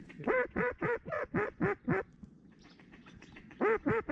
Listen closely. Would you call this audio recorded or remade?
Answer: remade